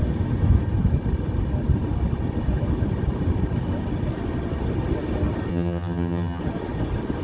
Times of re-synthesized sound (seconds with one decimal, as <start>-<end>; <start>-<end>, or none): 5.5-6.4